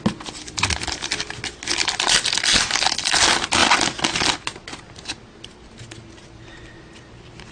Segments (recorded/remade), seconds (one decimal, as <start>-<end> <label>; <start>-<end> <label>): 0.0-7.5 recorded